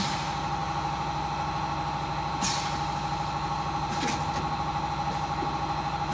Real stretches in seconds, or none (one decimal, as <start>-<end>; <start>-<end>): 0.0-6.1